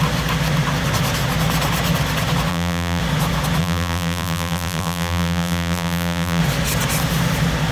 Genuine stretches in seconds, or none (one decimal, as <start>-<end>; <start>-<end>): 0.0-2.5; 3.0-3.6; 6.4-7.7